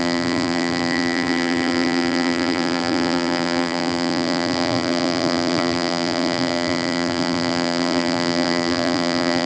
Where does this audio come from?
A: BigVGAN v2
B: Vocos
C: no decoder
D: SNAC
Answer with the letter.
A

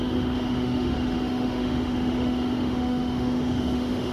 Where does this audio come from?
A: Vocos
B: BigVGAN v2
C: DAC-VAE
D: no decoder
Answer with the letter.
C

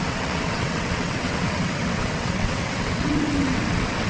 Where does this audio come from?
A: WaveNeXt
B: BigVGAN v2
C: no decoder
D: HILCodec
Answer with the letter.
A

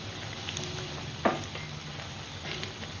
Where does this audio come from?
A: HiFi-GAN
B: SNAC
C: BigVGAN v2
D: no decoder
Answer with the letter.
D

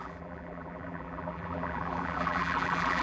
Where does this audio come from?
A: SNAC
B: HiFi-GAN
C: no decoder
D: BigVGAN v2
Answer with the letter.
D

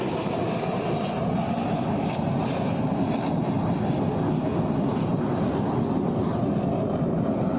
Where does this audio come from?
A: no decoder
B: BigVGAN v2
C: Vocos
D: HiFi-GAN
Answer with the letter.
A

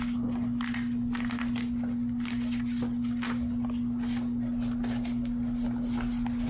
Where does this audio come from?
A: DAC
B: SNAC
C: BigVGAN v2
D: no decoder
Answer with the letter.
D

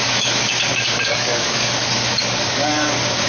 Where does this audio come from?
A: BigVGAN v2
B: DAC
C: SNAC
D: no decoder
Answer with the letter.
B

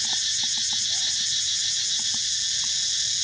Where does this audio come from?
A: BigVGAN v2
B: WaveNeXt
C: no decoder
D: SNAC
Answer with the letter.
C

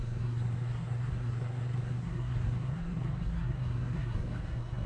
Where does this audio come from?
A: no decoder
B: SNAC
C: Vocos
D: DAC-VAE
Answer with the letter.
B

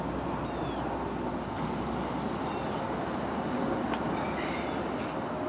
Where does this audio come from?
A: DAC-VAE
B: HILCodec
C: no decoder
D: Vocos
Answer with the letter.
C